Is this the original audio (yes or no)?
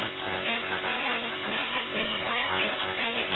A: no